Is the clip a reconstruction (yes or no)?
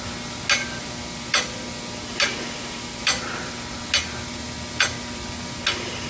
no